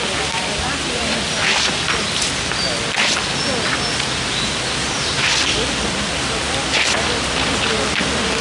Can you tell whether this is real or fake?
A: real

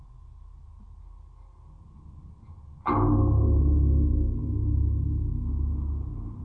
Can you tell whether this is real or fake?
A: real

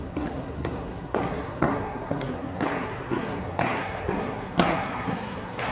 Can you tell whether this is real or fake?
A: fake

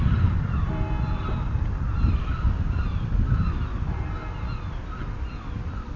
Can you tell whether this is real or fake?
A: real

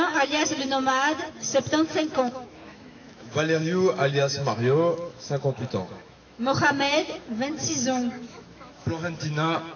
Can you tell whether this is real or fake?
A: fake